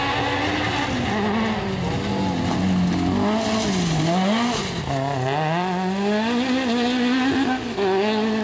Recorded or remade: recorded